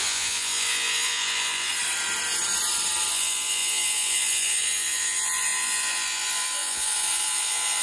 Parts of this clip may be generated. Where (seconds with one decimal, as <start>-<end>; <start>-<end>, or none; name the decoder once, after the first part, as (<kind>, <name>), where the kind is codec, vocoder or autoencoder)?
0.0-1.7 (vocoder, Vocos); 3.1-7.8